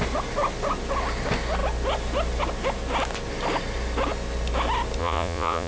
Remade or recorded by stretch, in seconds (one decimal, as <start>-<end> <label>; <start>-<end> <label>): 0.0-5.0 recorded; 5.0-5.7 remade